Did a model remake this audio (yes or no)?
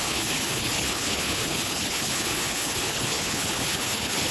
yes